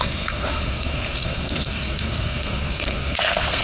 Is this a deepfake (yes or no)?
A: yes